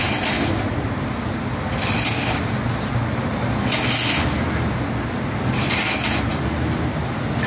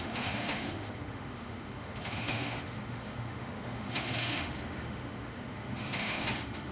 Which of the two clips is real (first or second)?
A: first